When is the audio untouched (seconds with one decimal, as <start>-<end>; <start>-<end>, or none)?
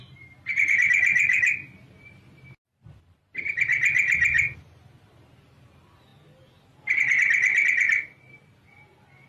0.0-9.3